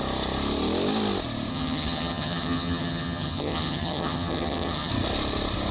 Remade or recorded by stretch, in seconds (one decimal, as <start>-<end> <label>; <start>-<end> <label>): 0.0-1.5 recorded; 1.5-4.9 remade; 4.9-5.7 recorded

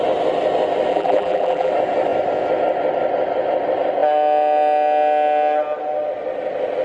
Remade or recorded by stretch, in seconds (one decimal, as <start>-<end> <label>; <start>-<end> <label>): 0.0-0.9 recorded; 0.9-1.7 remade; 1.7-6.8 recorded